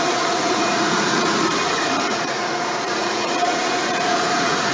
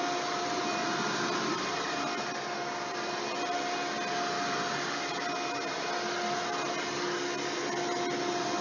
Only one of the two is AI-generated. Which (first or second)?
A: first